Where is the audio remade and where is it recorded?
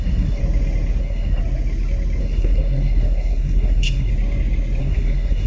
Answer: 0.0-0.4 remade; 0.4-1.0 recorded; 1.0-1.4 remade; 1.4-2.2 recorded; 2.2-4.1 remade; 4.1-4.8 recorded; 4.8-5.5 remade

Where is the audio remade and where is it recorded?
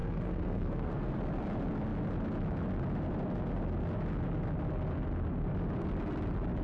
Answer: 0.0-1.2 remade; 1.2-6.6 recorded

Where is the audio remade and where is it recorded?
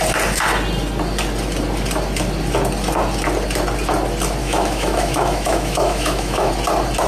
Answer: 0.0-4.4 recorded; 4.4-6.5 remade; 6.5-7.1 recorded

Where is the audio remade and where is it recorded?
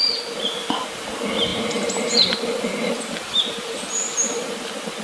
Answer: 0.0-1.5 recorded; 1.5-4.5 remade; 4.5-5.0 recorded